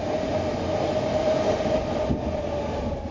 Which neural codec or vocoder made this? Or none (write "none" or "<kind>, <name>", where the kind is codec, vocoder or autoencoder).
none